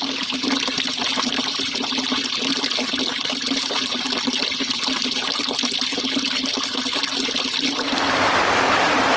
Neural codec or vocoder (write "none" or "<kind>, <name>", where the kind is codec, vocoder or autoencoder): none